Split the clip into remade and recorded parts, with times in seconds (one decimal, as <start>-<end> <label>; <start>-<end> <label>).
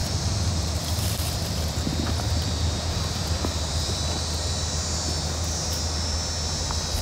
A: 0.0-4.0 remade; 4.0-7.0 recorded